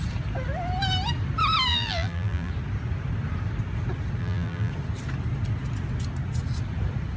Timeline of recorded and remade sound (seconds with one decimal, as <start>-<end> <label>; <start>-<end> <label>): 0.0-1.7 recorded; 1.7-2.5 remade; 2.5-4.2 recorded; 4.2-4.7 remade; 4.7-7.2 recorded